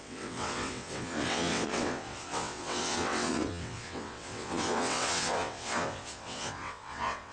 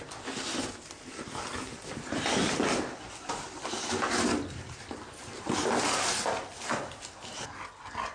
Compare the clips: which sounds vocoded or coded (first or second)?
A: first